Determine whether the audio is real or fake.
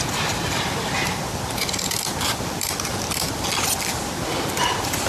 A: real